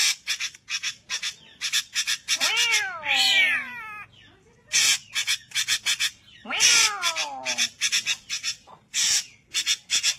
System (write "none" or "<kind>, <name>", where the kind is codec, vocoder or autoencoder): none